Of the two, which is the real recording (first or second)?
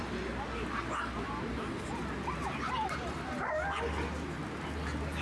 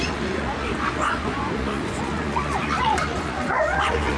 first